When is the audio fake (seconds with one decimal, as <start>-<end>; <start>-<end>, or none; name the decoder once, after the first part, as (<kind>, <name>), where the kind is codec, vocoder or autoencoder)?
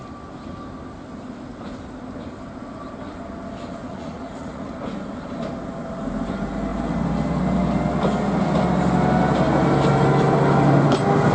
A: 3.8-4.7 (vocoder, Vocos)